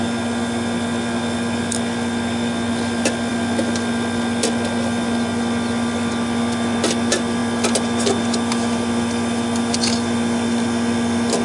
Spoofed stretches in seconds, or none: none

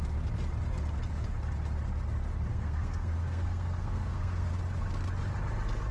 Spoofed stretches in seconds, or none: 2.5-4.5 (codec, SNAC)

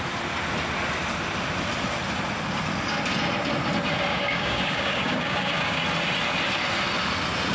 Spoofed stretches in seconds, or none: 4.1-5.8 (codec, DAC)

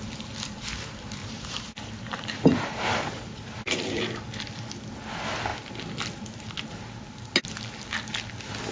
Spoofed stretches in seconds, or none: 1.2-4.1 (vocoder, BigVGAN v2)

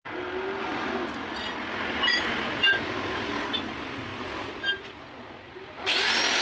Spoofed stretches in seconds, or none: none

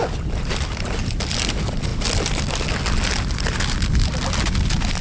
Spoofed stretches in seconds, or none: none

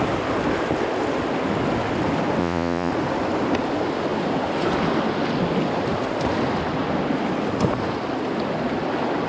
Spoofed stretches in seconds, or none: 2.4-2.9 (vocoder, Vocos)

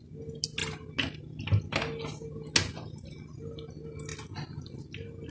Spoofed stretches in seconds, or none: none